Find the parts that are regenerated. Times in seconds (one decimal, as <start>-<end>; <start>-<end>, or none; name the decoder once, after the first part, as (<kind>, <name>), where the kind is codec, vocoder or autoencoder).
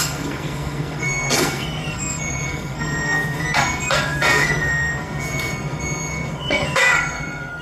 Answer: 0.0-7.6 (codec, SNAC)